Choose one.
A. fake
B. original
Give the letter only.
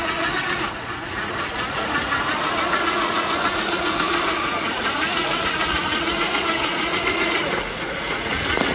A